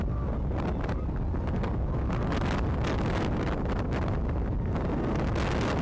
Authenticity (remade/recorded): recorded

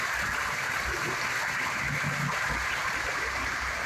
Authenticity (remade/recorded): recorded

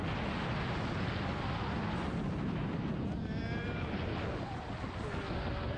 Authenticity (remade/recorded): recorded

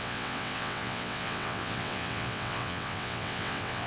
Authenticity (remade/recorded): remade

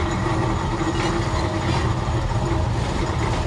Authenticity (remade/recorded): recorded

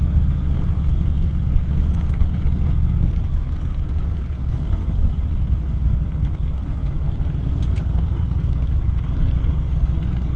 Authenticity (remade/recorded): remade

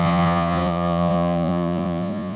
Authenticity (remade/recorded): remade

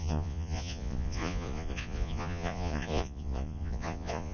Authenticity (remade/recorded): remade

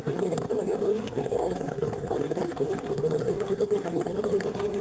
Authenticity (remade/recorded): remade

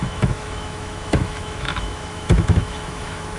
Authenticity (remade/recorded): remade